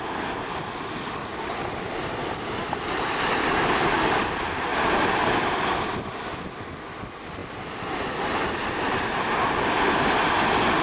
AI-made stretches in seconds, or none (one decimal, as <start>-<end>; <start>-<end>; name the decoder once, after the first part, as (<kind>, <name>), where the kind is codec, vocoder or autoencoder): none